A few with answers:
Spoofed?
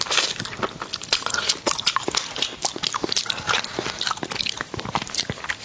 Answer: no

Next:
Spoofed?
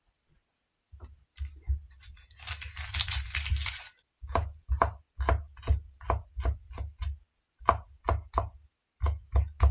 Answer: no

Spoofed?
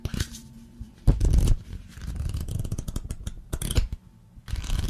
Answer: yes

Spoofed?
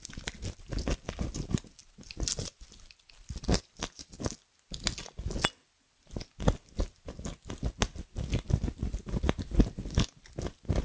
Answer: no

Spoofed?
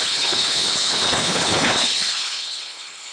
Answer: yes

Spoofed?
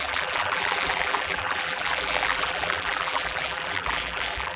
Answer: yes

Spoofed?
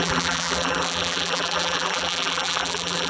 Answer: yes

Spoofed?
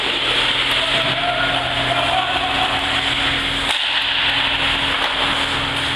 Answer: no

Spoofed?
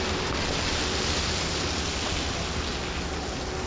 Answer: no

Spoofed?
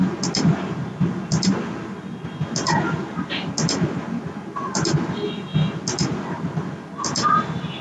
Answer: no